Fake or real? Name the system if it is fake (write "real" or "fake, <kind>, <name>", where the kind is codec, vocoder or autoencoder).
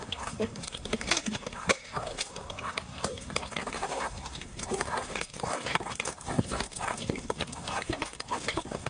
fake, codec, SNAC